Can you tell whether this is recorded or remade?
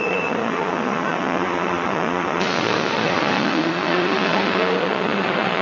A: remade